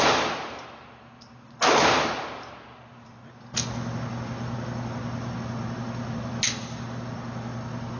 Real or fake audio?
real